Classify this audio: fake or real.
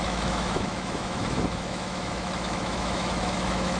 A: fake